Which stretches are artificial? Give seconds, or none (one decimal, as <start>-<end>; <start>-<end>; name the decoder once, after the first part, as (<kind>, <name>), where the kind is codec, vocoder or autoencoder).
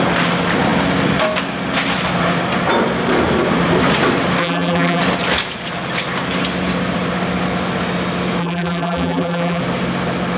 4.4-5.0 (vocoder, BigVGAN v2); 8.4-9.6